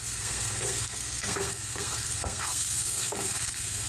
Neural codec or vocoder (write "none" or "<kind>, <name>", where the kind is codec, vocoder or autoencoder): codec, SNAC